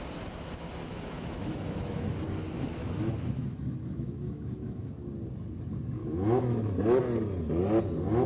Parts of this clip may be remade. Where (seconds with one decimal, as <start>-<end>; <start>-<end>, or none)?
0.9-2.1; 2.8-4.9; 6.0-6.7